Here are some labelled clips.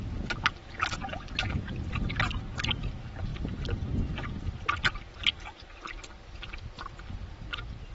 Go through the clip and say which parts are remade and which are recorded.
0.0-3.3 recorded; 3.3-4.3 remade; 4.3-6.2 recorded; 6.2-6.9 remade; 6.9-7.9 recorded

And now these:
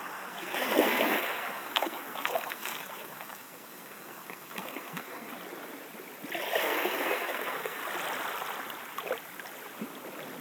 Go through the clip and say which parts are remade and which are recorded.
0.0-5.3 remade; 5.3-6.6 recorded; 6.6-7.8 remade; 7.8-10.4 recorded

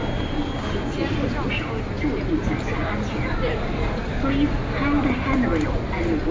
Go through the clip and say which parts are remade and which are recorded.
0.0-6.3 recorded

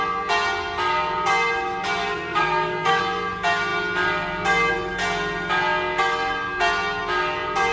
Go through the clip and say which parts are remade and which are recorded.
0.0-2.0 recorded; 2.0-3.0 remade; 3.0-7.7 recorded

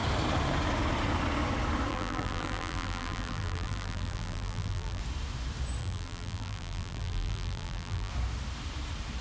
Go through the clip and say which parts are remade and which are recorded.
0.0-1.9 recorded; 1.9-5.0 remade; 5.0-5.8 recorded; 5.8-8.1 remade; 8.1-9.2 recorded

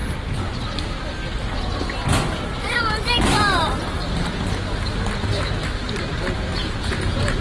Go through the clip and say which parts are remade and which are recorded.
0.0-6.6 recorded; 6.6-7.4 remade

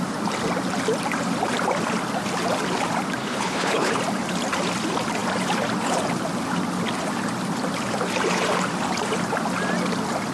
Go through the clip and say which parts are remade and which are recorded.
0.0-3.2 recorded; 3.2-3.9 remade; 3.9-10.3 recorded

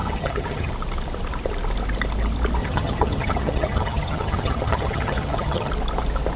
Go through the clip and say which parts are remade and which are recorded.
0.0-0.7 remade; 0.7-2.6 recorded; 2.6-5.7 remade; 5.7-6.4 recorded